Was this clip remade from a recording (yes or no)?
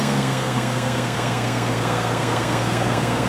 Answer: yes